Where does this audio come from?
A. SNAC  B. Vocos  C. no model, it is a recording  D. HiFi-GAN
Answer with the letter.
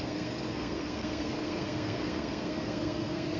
A